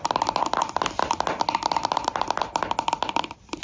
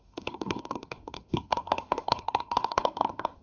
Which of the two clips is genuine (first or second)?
first